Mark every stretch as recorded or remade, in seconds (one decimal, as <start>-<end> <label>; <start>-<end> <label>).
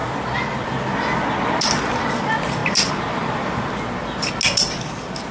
0.0-5.3 recorded